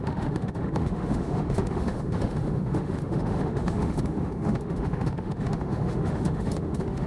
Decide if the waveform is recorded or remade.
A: remade